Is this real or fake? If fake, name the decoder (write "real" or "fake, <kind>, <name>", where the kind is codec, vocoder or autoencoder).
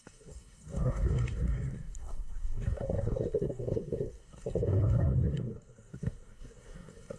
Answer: fake, codec, SNAC